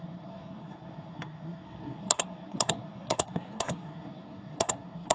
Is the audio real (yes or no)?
no